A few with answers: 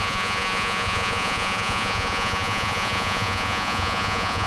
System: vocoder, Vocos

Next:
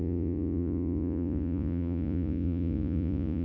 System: vocoder, Vocos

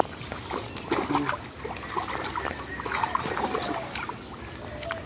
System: none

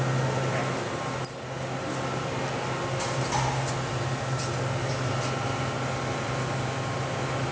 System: none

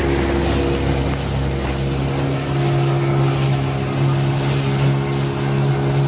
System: none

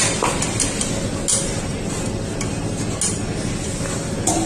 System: none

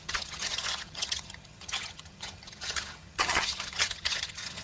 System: vocoder, HiFi-GAN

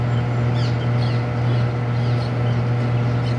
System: none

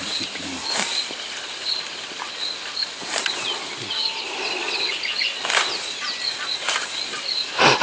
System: none